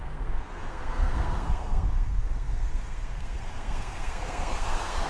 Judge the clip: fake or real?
fake